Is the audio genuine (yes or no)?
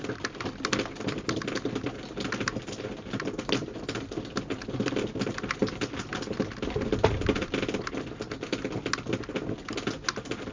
yes